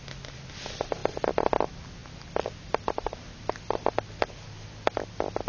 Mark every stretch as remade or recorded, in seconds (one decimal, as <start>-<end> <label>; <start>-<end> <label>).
0.0-5.5 recorded